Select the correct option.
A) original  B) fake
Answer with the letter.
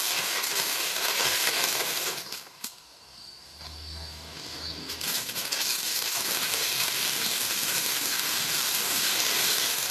B